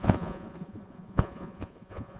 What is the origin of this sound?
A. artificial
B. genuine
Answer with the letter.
A